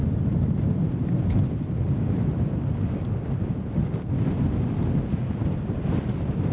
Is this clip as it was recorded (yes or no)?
yes